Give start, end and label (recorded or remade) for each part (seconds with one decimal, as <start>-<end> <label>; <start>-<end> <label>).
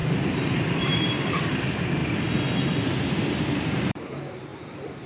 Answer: 0.0-2.0 remade; 2.0-3.4 recorded; 3.4-4.5 remade; 4.5-5.1 recorded